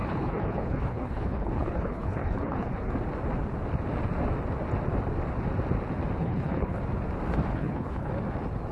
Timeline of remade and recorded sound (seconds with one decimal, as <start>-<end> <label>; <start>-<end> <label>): 0.0-2.9 remade; 2.9-6.2 recorded; 6.2-6.8 remade; 6.8-7.5 recorded; 7.5-8.1 remade; 8.1-8.7 recorded